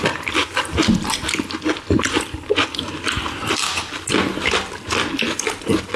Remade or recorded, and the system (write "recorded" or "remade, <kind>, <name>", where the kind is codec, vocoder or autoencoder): recorded